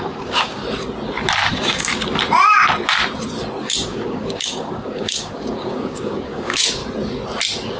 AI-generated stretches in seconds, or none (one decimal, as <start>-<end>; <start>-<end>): 0.0-0.6; 1.5-1.9; 3.6-6.8